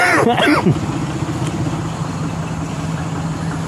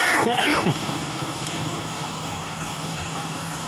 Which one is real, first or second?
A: first